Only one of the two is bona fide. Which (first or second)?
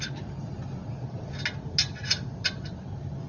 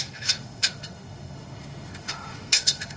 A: first